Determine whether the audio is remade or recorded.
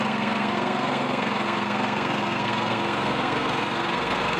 remade